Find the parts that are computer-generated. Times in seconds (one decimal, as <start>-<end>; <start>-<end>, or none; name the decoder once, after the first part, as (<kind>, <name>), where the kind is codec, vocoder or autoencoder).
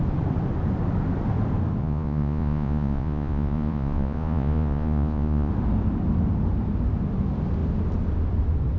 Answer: 1.8-5.5 (vocoder, Vocos)